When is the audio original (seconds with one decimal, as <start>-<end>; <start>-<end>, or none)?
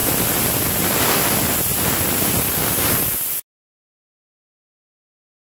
0.0-5.4